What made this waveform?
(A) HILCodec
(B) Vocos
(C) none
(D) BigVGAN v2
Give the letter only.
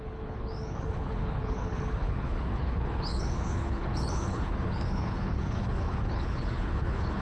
A